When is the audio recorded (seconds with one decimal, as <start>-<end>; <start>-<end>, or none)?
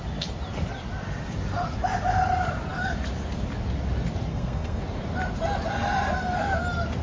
0.0-4.3; 4.8-7.0